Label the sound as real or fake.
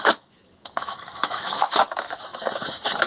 fake